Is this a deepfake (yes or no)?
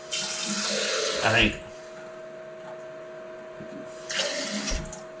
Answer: no